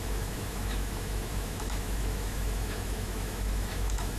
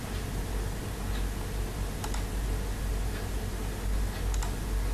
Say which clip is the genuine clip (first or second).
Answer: second